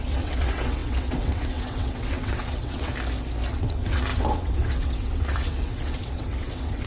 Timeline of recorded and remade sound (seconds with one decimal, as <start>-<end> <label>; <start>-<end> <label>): 0.0-2.9 remade; 2.9-3.5 recorded; 3.5-6.9 remade